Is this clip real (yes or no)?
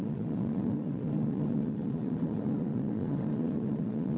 no